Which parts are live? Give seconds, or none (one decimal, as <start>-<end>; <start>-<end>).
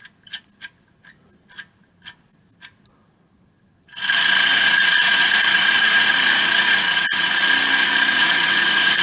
0.0-4.5; 7.4-8.1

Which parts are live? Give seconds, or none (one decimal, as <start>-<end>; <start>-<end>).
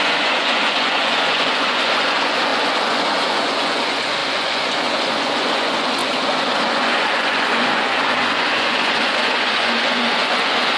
none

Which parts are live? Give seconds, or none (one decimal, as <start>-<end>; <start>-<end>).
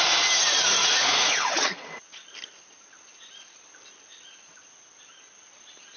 0.0-0.7; 2.2-6.0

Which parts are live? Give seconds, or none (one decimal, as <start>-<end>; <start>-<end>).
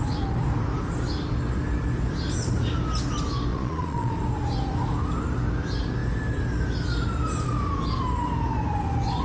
0.0-3.5; 4.1-9.2